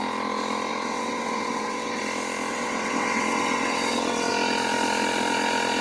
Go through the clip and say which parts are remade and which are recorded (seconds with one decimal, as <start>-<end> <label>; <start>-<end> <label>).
0.0-0.7 recorded; 0.7-2.0 remade; 2.0-2.5 recorded; 2.5-4.3 remade; 4.3-5.8 recorded